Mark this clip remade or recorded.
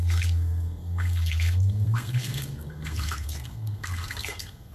remade